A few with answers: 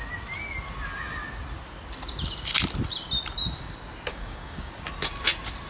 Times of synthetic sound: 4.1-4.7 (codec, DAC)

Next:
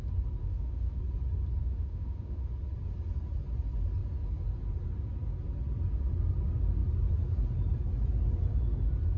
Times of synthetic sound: 0.4-1.0 (autoencoder, DAC-VAE); 1.6-2.5

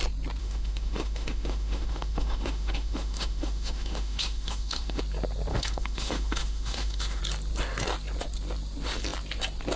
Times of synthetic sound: 0.4-5.0 (autoencoder, DAC-VAE); 5.5-7.2